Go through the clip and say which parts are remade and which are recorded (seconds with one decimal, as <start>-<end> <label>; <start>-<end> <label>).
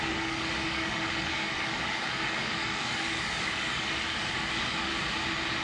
0.0-4.9 remade; 4.9-5.6 recorded